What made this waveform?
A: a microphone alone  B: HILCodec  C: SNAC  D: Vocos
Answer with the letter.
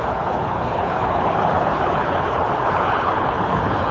B